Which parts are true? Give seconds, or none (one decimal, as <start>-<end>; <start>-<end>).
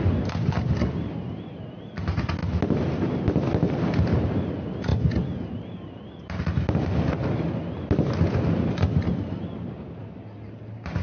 0.0-11.0